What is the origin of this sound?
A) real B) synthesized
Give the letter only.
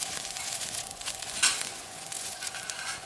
B